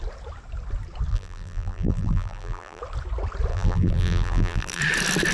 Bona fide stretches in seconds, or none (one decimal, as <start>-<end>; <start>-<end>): 0.0-1.1; 2.8-3.5; 4.8-5.3